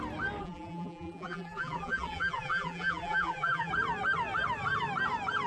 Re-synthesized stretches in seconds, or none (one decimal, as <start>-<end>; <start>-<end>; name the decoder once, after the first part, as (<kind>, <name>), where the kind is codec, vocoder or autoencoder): 0.4-3.7 (vocoder, BigVGAN v2)